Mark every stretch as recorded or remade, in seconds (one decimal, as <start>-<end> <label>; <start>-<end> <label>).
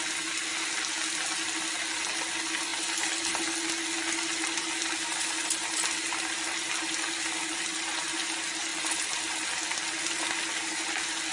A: 0.0-11.3 recorded